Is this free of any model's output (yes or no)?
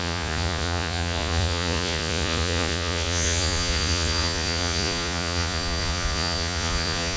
no